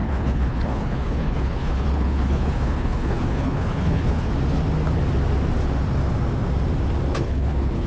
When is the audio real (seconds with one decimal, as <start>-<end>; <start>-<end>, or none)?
4.3-7.1